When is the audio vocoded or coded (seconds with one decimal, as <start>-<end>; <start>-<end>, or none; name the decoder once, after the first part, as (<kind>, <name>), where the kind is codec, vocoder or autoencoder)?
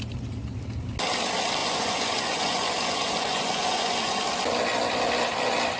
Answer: 1.6-4.2 (vocoder, Vocos)